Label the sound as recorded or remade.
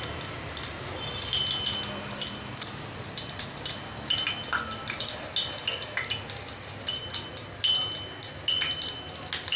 recorded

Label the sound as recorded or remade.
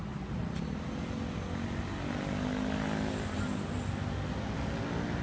recorded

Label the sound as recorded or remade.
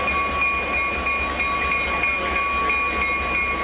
recorded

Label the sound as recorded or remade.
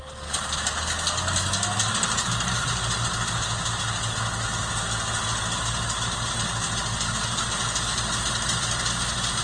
recorded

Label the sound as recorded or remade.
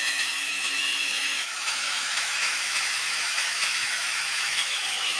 remade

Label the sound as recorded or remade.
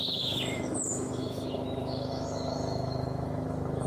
remade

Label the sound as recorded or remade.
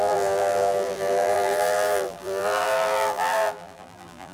remade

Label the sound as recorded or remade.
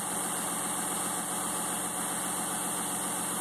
recorded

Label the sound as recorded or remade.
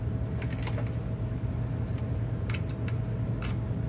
recorded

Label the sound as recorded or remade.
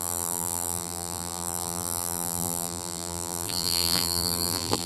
remade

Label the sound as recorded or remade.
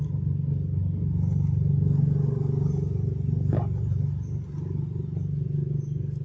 recorded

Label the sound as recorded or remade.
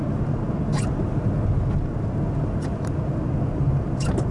recorded